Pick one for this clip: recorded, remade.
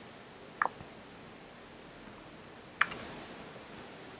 recorded